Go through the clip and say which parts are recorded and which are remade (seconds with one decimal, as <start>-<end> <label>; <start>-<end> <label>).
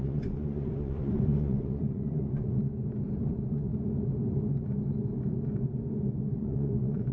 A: 0.0-2.7 remade; 2.7-3.3 recorded; 3.3-3.7 remade; 3.7-6.1 recorded; 6.1-7.1 remade